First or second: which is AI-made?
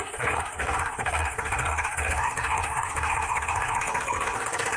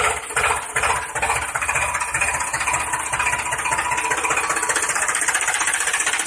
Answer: first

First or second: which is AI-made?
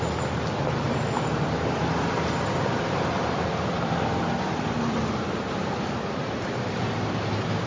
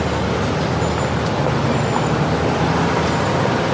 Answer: first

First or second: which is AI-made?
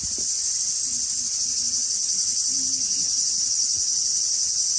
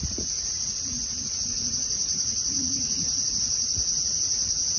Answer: second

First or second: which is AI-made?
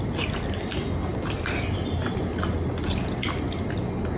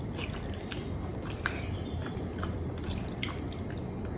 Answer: second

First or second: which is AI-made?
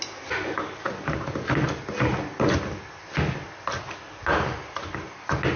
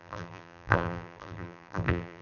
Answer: second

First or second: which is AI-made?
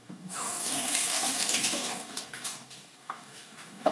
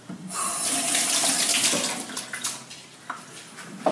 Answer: first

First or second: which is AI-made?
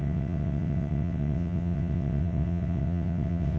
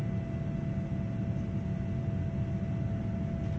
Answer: first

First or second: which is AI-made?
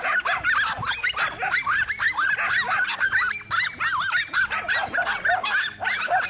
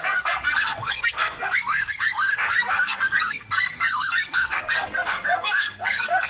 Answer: second